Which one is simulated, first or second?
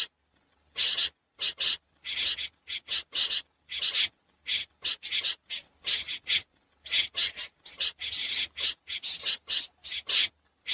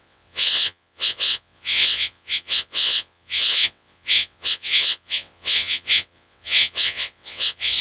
second